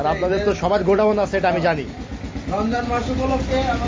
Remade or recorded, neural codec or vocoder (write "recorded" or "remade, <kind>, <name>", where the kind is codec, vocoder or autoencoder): recorded